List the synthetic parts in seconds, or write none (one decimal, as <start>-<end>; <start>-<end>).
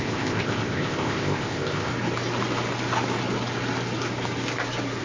0.0-1.9